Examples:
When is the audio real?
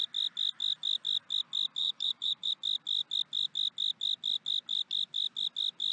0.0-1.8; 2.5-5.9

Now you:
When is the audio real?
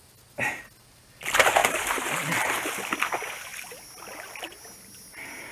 0.0-1.6; 2.7-5.5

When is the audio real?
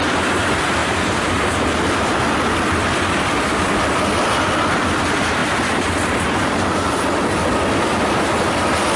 0.0-0.8; 1.6-5.4; 7.0-9.0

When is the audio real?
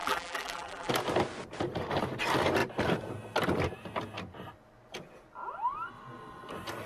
0.9-6.9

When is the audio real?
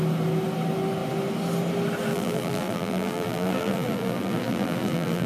0.0-2.1